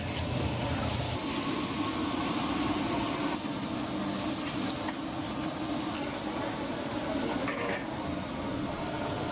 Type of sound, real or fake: real